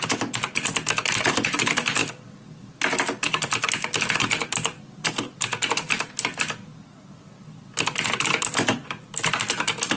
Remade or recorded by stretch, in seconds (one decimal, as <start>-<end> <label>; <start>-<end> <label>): 0.0-10.0 recorded